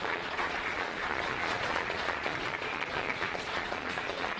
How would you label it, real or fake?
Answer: fake